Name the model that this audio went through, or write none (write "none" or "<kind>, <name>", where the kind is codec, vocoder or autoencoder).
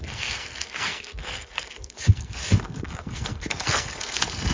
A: codec, SNAC